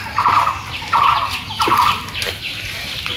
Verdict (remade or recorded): recorded